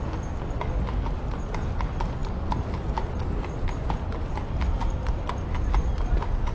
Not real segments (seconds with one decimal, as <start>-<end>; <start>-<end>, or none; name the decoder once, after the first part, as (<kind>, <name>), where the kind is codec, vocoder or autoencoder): none